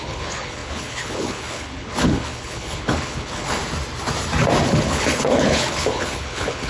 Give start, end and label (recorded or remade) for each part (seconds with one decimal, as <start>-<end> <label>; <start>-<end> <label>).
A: 0.0-3.6 remade; 3.6-4.7 recorded; 4.7-6.7 remade